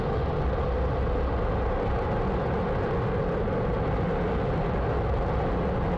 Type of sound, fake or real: real